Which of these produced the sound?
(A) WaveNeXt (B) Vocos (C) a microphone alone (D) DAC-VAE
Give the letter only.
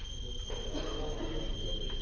C